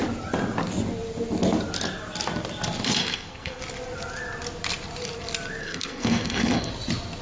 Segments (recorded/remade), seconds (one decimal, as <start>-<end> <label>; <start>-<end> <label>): 0.0-3.0 recorded; 3.0-3.6 remade; 3.6-5.6 recorded; 5.6-6.7 remade; 6.7-7.2 recorded